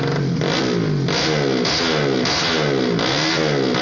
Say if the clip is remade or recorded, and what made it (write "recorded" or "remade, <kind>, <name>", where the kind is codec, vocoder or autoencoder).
recorded